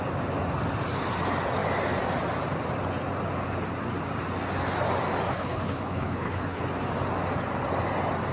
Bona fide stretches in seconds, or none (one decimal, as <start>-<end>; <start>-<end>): 0.0-5.3; 6.6-8.3